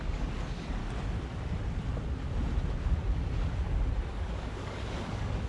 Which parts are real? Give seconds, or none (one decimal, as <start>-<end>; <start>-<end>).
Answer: 0.8-4.1